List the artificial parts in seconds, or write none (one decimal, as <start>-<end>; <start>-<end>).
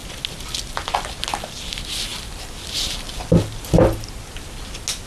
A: none